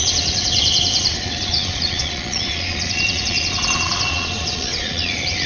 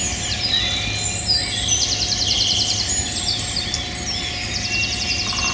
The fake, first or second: first